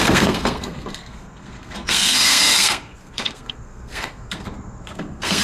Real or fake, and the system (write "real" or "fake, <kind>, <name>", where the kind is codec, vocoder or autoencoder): fake, codec, SNAC